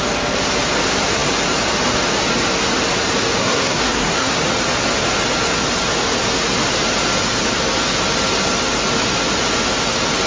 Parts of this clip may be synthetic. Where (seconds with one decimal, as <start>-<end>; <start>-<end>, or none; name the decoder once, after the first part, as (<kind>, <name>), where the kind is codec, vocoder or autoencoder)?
3.4-4.4 (codec, SNAC)